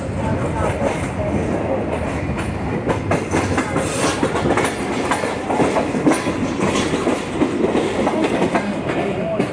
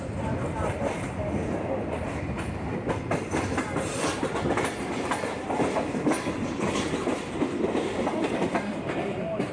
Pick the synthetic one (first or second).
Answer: second